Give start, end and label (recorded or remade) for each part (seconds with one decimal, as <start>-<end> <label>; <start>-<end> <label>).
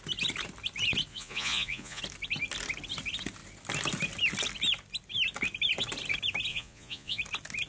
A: 0.0-1.1 recorded; 1.1-2.0 remade; 2.0-6.5 recorded; 6.5-7.2 remade; 7.2-7.7 recorded